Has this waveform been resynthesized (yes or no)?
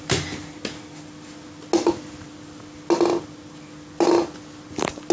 no